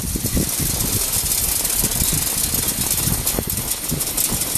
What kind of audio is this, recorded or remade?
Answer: recorded